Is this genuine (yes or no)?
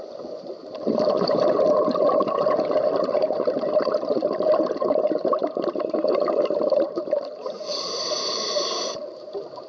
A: no